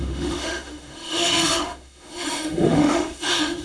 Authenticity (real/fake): fake